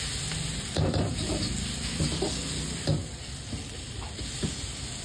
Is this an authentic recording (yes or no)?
yes